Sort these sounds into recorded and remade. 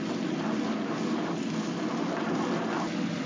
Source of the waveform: recorded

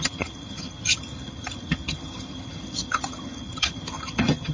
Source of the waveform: remade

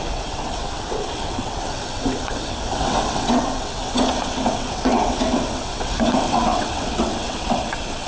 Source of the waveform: remade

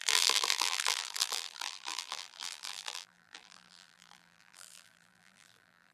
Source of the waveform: remade